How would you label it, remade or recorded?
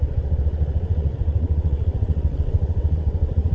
remade